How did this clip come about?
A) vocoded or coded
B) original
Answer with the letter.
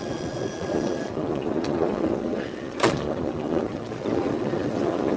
A